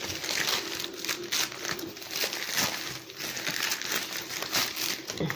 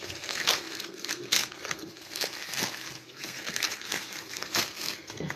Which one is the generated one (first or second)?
second